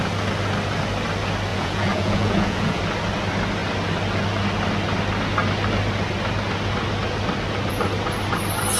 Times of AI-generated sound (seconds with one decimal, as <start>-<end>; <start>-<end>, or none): 1.5-2.8